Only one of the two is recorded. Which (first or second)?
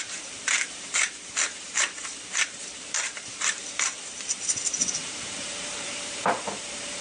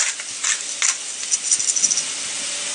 second